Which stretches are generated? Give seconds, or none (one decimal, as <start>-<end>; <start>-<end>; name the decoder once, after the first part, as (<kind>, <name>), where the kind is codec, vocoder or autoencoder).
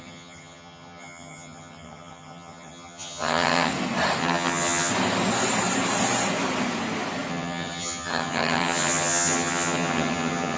0.0-3.7 (vocoder, HiFi-GAN); 4.2-4.9; 7.3-10.6